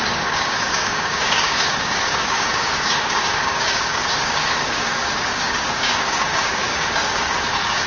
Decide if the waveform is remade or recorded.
remade